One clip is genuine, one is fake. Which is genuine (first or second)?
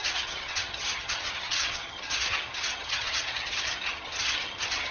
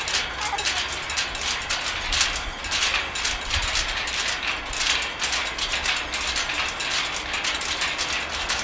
second